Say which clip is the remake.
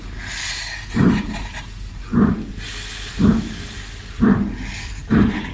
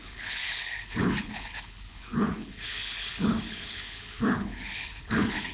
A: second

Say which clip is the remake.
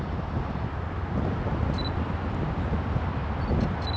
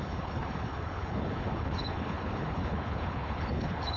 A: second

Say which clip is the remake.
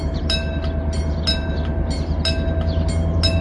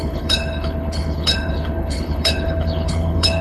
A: second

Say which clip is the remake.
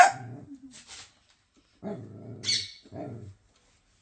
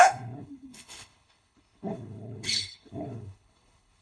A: second